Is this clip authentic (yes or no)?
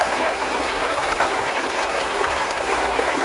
no